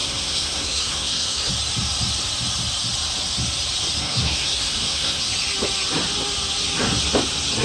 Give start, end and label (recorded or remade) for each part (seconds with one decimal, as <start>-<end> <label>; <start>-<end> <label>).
0.0-1.5 remade; 1.5-4.0 recorded; 4.0-5.2 remade; 5.2-7.6 recorded